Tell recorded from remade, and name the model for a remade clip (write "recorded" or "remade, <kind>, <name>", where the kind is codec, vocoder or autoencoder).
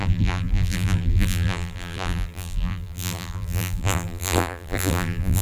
remade, vocoder, BigVGAN v2